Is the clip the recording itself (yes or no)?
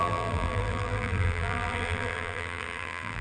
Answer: no